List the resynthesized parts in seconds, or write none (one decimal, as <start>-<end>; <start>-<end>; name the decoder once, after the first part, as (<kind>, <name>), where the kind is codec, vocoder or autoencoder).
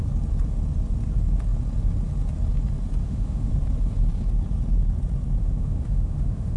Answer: 3.0-3.5 (autoencoder, DAC-VAE); 5.4-6.6